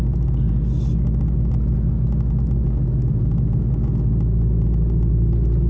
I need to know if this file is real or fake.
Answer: real